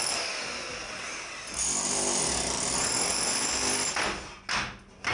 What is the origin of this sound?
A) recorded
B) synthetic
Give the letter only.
A